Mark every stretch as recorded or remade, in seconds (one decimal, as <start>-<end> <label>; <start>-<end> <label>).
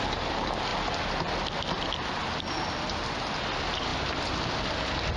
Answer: 0.0-5.2 recorded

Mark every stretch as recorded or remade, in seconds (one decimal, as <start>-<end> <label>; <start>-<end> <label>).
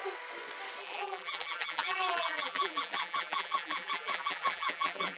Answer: 0.0-0.8 recorded; 0.8-5.2 remade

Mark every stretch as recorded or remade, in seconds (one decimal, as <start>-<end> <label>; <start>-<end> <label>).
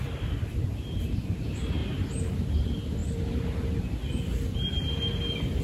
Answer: 0.0-1.8 remade; 1.8-2.4 recorded; 2.4-3.0 remade; 3.0-5.6 recorded